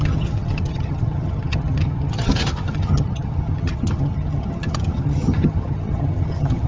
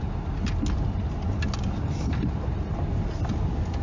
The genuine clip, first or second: second